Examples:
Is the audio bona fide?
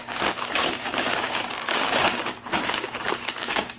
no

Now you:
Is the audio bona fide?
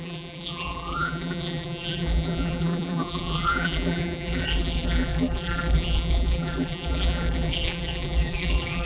no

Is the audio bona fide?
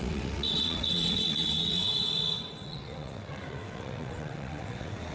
no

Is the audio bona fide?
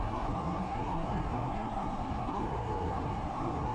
no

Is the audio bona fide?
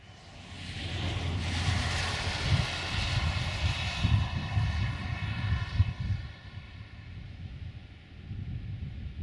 yes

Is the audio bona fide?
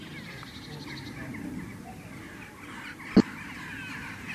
yes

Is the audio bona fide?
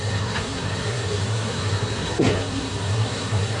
no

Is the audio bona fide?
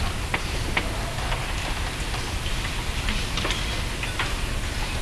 yes